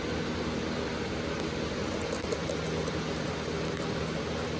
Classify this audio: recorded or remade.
recorded